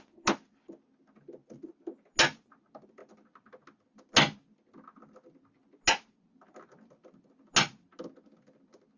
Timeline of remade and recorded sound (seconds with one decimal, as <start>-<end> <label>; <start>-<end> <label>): 0.0-9.0 recorded